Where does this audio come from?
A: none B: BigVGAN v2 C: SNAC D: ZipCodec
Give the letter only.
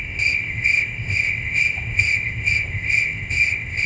D